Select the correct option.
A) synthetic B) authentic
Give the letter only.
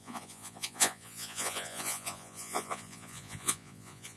A